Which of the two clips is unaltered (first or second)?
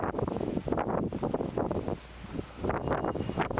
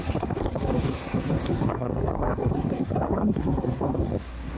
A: first